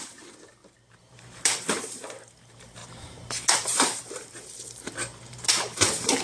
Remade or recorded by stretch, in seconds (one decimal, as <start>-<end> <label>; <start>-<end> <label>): 0.0-6.2 remade